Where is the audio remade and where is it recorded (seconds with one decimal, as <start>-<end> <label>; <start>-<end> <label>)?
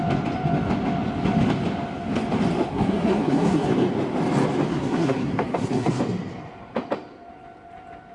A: 0.0-2.7 recorded; 2.7-3.7 remade; 3.7-4.7 recorded; 4.7-6.0 remade; 6.0-8.1 recorded